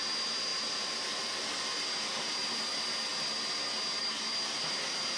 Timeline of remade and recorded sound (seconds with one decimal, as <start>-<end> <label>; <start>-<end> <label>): 0.0-5.2 recorded